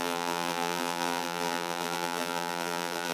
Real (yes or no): no